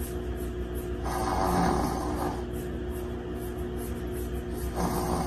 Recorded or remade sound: recorded